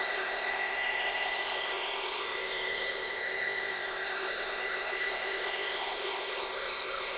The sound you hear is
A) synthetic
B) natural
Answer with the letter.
A